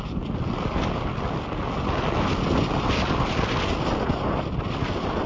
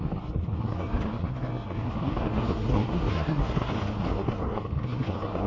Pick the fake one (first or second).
second